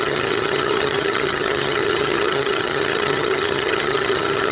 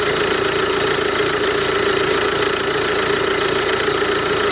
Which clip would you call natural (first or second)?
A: second